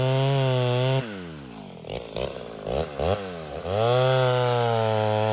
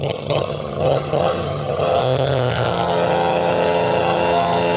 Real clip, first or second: first